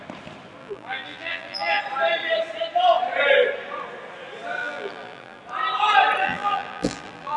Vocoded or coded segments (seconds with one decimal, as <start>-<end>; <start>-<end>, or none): 0.6-1.8; 4.6-5.4; 6.2-7.4